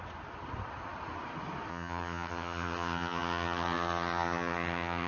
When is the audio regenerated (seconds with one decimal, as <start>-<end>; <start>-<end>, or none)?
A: 1.7-5.1